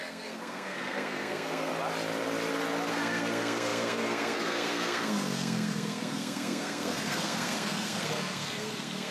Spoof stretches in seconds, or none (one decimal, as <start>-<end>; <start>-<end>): 0.0-1.7; 2.9-9.1